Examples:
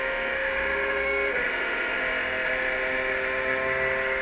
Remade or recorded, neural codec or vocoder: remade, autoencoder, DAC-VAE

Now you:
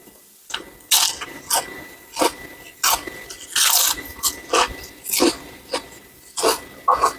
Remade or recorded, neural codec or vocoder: recorded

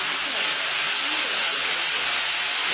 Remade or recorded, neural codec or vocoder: recorded